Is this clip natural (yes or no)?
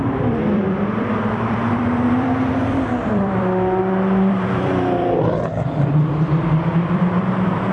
no